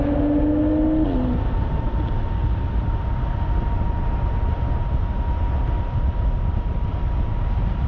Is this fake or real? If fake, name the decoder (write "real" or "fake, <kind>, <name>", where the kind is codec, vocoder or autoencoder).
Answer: real